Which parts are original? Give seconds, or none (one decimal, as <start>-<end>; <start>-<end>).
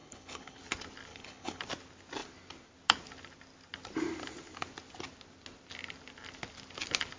0.6-1.1; 1.6-7.2